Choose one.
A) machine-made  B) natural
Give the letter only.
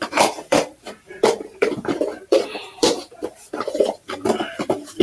A